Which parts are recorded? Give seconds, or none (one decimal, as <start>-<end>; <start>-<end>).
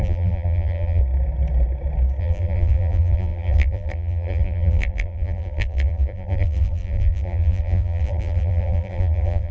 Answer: 1.0-2.2